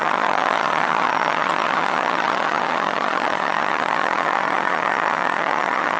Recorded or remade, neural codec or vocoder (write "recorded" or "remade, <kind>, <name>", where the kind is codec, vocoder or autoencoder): remade, vocoder, HiFi-GAN